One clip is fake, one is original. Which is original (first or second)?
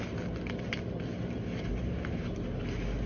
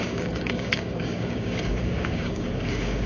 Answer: first